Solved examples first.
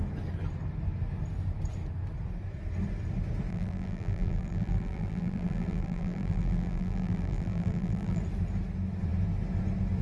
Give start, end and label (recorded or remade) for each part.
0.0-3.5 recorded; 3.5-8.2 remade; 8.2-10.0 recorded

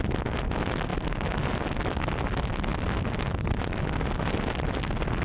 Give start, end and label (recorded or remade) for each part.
0.0-0.9 recorded; 0.9-2.0 remade; 2.0-2.7 recorded; 2.7-3.8 remade; 3.8-5.2 recorded

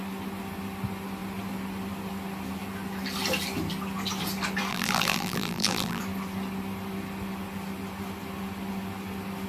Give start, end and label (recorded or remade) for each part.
0.0-4.7 recorded; 4.7-6.0 remade; 6.0-9.5 recorded

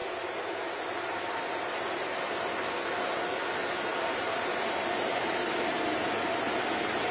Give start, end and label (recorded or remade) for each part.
0.0-3.9 recorded; 3.9-7.1 remade

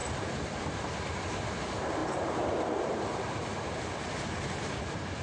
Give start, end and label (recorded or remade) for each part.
0.0-0.6 remade; 0.6-2.0 recorded; 2.0-4.2 remade; 4.2-5.2 recorded

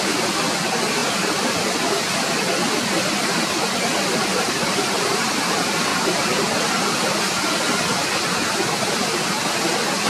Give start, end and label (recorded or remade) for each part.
0.0-4.3 recorded; 4.3-5.4 remade; 5.4-10.1 recorded

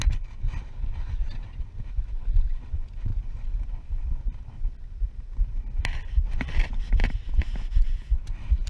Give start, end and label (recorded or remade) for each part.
0.0-7.0 remade; 7.0-7.9 recorded; 7.9-8.7 remade

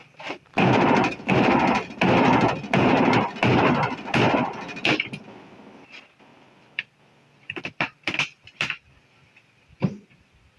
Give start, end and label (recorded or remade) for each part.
0.0-1.3 remade; 1.3-3.6 recorded; 3.6-5.4 remade; 5.4-6.3 recorded; 6.3-10.2 remade; 10.2-10.6 recorded